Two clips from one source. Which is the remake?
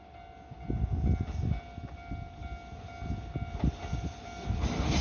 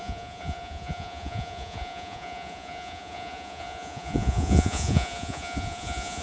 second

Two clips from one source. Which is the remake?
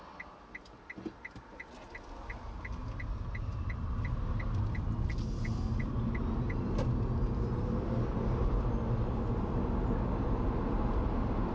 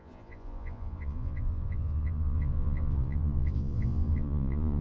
second